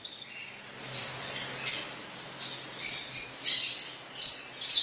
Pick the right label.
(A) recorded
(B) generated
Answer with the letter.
A